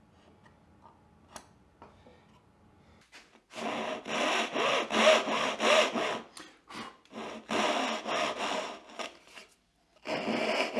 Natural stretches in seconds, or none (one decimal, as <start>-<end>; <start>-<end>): 0.0-10.8